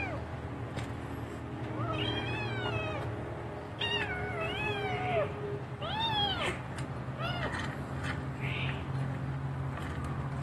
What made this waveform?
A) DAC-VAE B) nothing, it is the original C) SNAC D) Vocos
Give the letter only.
B